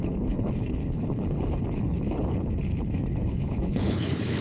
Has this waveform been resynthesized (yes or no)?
yes